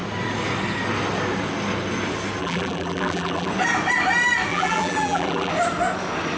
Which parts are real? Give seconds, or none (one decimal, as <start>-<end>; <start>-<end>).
0.0-2.4; 3.5-4.5; 5.5-6.4